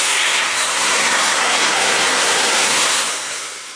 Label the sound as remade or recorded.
remade